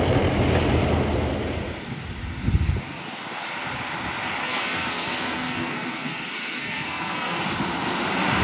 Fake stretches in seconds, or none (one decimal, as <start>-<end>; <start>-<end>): 4.4-7.4